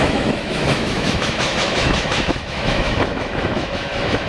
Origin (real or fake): fake